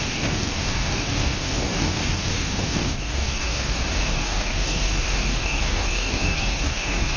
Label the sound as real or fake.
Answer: fake